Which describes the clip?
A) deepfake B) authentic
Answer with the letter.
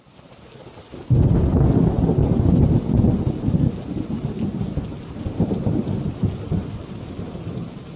B